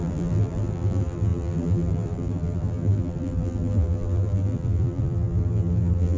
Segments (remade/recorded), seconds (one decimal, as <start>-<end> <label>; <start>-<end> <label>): 0.0-6.2 remade